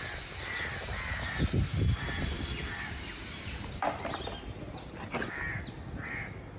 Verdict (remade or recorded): recorded